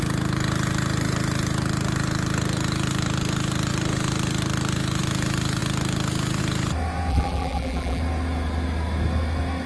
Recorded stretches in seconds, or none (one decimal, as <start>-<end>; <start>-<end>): 0.0-7.1; 8.0-9.7